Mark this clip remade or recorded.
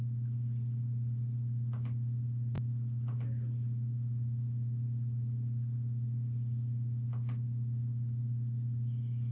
recorded